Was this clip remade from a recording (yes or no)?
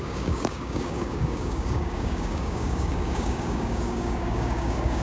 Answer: yes